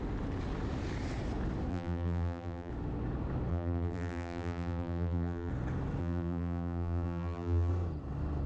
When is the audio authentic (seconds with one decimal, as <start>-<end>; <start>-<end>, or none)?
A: 0.0-1.7; 2.7-3.5; 5.5-6.0; 7.7-8.5